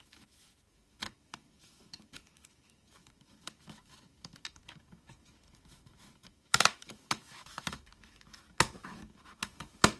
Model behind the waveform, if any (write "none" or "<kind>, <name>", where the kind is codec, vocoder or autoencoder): autoencoder, DAC-VAE